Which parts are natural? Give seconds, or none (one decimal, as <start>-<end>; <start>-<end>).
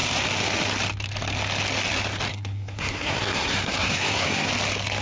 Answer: 0.0-2.3; 4.5-5.0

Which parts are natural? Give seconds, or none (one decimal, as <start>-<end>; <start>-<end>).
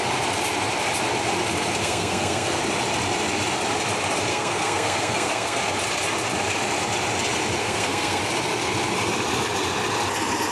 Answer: 0.0-1.8; 2.6-4.3; 5.6-7.6; 8.2-10.5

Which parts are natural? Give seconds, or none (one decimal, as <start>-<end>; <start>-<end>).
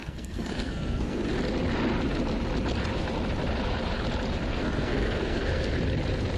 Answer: 1.2-4.5; 5.7-6.4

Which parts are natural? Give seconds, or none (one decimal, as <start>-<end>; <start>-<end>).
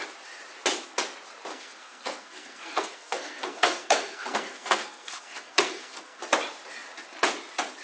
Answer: 0.0-1.5; 6.2-7.8